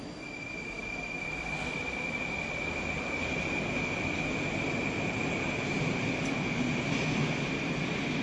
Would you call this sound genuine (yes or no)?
yes